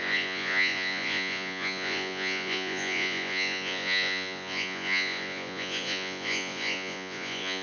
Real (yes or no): no